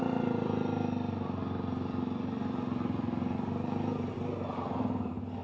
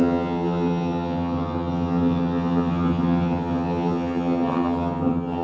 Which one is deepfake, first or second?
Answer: second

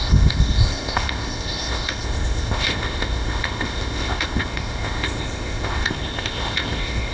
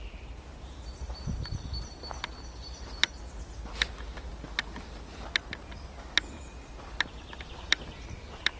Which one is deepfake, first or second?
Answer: first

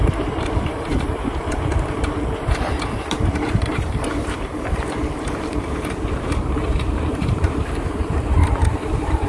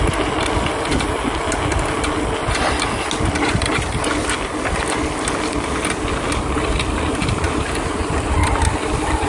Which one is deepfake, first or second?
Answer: first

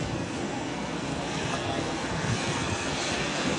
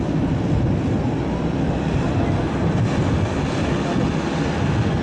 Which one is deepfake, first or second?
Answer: first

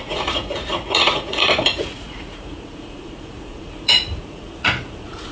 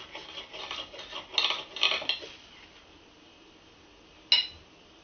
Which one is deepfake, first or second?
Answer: first